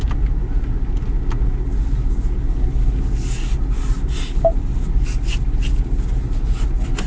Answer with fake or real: real